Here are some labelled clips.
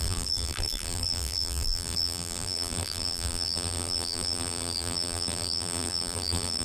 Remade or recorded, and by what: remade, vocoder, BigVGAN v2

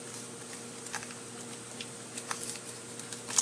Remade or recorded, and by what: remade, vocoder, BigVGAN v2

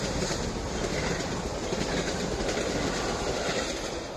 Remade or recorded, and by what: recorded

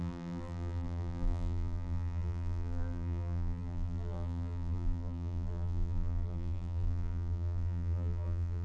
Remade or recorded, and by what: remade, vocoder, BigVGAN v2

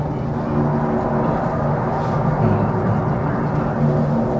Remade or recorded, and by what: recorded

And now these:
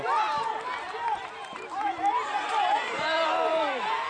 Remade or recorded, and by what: remade, vocoder, BigVGAN v2